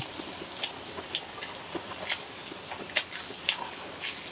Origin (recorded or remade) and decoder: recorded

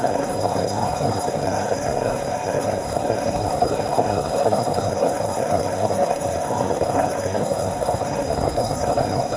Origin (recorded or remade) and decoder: remade, codec, SNAC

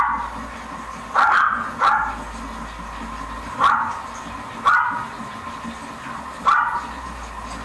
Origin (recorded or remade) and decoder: recorded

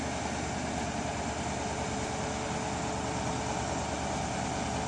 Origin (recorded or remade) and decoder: recorded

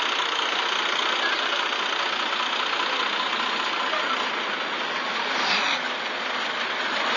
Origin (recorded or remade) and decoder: recorded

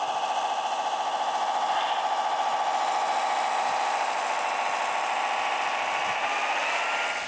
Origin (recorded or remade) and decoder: recorded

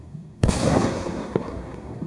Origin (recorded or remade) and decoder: remade, codec, SNAC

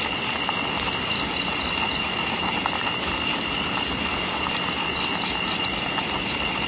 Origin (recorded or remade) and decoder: recorded